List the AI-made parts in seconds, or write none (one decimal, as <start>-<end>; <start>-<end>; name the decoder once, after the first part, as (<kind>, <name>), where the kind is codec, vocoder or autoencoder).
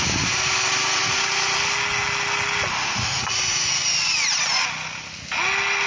2.7-3.2 (autoencoder, DAC-VAE)